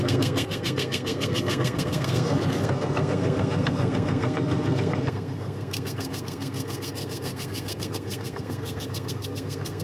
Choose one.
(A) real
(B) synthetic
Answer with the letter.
B